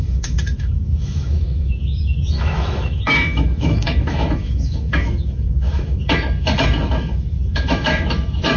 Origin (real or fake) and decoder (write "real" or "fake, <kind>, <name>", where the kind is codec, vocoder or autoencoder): fake, autoencoder, DAC-VAE